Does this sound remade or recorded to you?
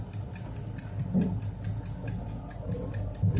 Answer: recorded